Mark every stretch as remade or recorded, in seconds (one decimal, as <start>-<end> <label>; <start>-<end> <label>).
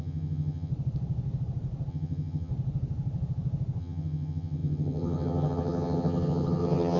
0.0-0.7 remade; 0.7-1.9 recorded; 1.9-2.5 remade; 2.5-3.8 recorded; 3.8-7.0 remade